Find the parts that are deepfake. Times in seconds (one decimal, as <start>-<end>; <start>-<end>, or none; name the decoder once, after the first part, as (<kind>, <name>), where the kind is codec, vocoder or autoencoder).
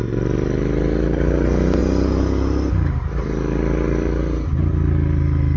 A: none